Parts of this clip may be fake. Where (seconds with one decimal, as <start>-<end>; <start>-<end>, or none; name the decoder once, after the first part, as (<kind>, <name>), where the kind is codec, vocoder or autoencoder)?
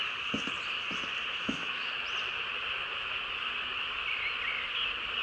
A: 1.3-1.9 (autoencoder, DAC-VAE)